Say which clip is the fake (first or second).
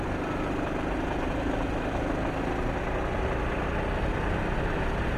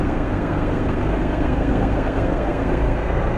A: second